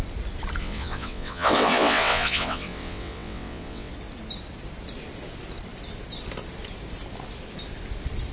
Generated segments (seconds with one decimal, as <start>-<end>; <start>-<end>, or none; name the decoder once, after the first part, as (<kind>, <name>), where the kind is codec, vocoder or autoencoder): 0.6-3.9 (vocoder, WaveNeXt)